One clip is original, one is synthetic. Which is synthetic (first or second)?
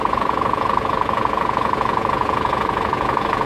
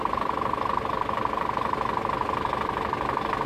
first